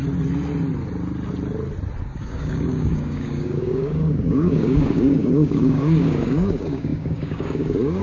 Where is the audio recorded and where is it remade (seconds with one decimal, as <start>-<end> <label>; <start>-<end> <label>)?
0.0-2.0 recorded; 2.0-8.0 remade